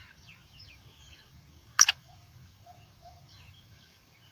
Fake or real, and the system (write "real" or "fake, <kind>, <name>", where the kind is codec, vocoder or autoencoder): fake, codec, DAC